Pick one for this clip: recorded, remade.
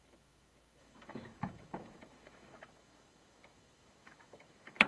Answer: remade